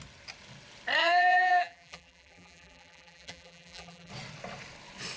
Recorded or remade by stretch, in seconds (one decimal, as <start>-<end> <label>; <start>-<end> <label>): 0.0-1.0 recorded; 1.0-4.1 remade; 4.1-5.2 recorded